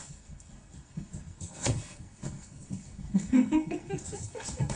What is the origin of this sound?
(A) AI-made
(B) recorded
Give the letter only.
A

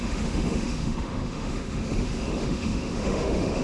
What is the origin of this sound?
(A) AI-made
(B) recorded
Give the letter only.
A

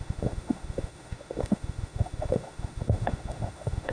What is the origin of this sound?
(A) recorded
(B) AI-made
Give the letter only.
B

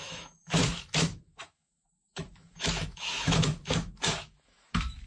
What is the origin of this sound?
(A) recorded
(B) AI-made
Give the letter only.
B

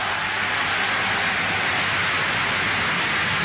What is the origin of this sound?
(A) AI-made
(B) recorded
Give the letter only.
B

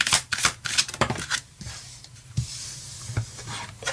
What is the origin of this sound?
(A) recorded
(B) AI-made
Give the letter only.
B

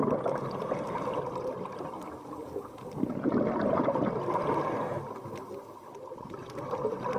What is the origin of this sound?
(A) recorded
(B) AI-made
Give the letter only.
A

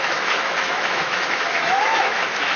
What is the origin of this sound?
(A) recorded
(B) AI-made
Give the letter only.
B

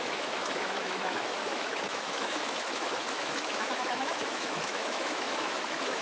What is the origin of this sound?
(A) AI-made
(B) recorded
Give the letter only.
A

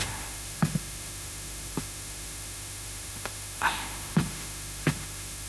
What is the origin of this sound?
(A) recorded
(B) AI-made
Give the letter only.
B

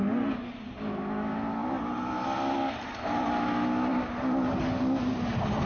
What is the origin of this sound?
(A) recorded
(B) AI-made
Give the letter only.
A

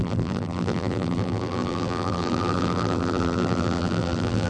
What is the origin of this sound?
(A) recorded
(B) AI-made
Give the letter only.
B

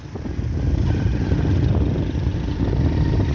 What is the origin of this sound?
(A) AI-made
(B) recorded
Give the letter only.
B